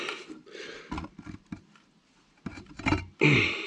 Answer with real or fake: real